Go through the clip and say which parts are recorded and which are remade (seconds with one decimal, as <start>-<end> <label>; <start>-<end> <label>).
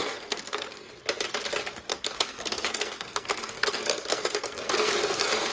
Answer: 0.0-0.9 remade; 0.9-1.9 recorded; 1.9-5.5 remade